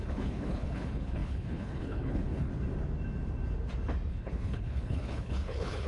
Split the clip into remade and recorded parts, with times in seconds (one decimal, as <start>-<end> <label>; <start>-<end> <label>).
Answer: 0.0-2.5 remade; 2.5-4.1 recorded; 4.1-5.9 remade